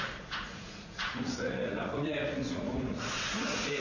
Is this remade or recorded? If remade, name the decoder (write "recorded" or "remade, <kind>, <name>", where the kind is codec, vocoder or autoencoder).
remade, vocoder, Vocos